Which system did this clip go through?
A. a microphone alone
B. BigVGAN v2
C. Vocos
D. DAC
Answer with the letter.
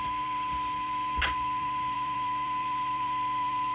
B